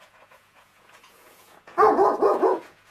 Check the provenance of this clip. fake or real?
fake